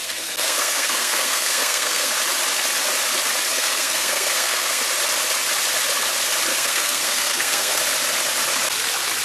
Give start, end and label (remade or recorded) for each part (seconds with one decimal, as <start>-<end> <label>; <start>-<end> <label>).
0.0-2.1 remade; 2.1-3.5 recorded; 3.5-4.8 remade; 4.8-6.5 recorded; 6.5-7.8 remade; 7.8-9.2 recorded